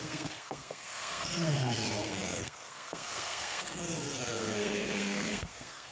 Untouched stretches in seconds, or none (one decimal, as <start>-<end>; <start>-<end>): none